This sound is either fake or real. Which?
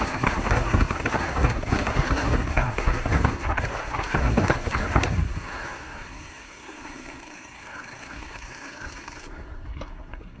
fake